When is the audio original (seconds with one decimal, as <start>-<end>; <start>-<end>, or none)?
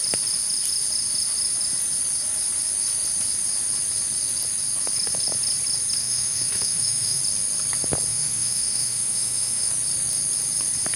0.0-6.0; 7.2-8.1; 9.7-11.0